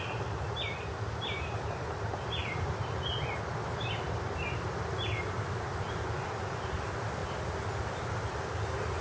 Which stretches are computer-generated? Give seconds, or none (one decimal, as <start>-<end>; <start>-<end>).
2.4-6.5; 7.2-7.8